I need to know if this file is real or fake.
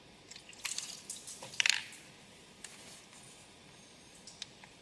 real